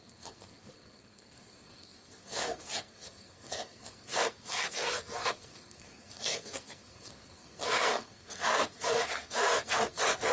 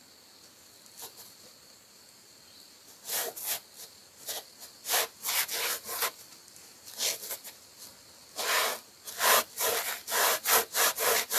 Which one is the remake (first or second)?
first